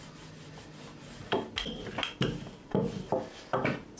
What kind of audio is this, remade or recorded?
recorded